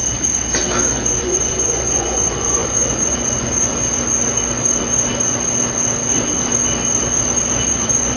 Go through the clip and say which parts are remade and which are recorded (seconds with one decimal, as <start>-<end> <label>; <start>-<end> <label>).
0.0-1.1 recorded; 1.1-3.7 remade; 3.7-7.7 recorded; 7.7-8.2 remade